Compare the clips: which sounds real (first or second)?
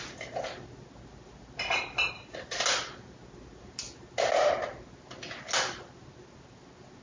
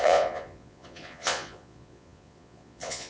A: first